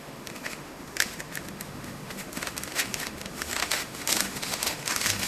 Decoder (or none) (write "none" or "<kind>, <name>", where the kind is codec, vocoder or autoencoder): autoencoder, DAC-VAE